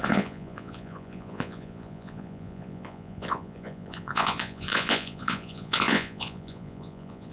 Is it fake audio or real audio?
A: fake